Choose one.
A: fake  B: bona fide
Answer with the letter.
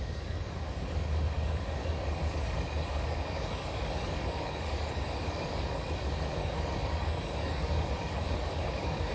A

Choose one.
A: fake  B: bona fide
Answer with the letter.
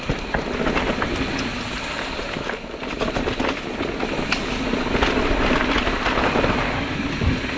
B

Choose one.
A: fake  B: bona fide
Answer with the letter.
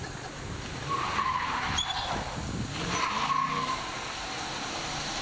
B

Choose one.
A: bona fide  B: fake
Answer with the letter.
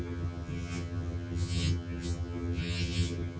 B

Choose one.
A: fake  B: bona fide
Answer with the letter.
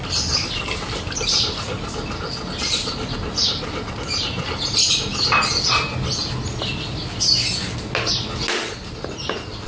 B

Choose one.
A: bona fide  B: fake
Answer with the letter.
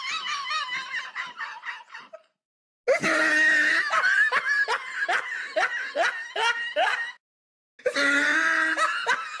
A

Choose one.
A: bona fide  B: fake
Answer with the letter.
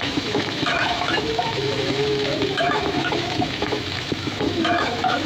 B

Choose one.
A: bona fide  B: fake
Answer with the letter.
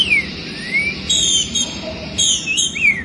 B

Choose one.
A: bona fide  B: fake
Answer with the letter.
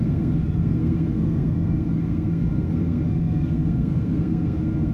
B